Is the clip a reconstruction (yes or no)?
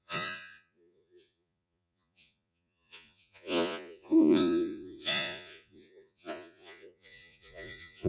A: yes